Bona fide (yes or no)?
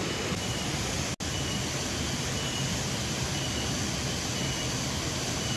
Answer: yes